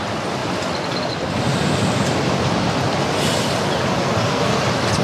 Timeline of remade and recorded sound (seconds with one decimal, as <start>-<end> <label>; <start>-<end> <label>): 0.0-4.0 recorded; 4.0-4.6 remade; 4.6-5.0 recorded